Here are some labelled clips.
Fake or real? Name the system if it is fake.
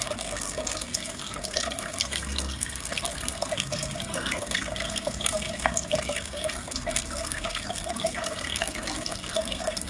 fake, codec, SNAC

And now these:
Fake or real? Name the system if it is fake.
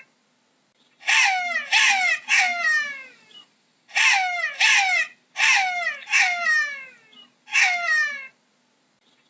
real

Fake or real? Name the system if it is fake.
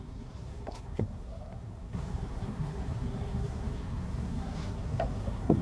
fake, codec, SNAC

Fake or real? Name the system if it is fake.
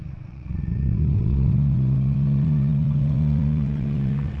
fake, vocoder, WaveNeXt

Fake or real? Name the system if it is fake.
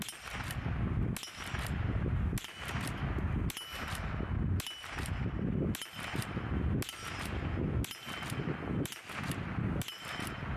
real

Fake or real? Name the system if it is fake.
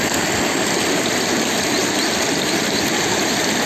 real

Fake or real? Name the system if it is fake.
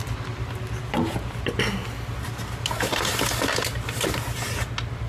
real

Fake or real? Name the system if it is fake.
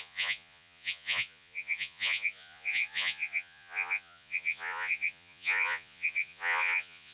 fake, vocoder, Vocos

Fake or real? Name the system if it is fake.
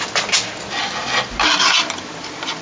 real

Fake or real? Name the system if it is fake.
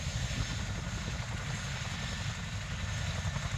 real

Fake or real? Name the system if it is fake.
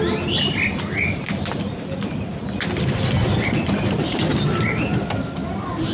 real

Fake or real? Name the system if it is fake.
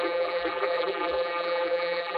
fake, vocoder, BigVGAN v2